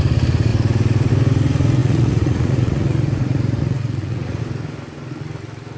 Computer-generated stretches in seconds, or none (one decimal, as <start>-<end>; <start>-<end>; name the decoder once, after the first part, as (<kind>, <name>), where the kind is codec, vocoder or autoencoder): 1.8-4.4 (vocoder, Vocos)